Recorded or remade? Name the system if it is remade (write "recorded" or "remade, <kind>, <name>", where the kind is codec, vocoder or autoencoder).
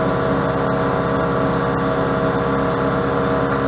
recorded